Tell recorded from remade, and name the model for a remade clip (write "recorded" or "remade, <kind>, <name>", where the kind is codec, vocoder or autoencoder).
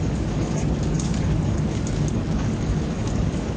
remade, codec, DAC